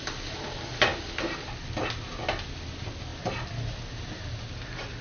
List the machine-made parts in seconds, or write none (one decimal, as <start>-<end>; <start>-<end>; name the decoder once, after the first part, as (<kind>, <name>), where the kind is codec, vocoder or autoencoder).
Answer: none